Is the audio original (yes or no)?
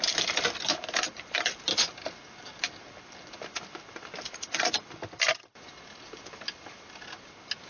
yes